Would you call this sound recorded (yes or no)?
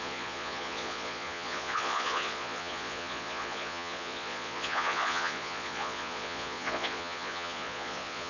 no